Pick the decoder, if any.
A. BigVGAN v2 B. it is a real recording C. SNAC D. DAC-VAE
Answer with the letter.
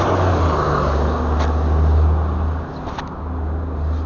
B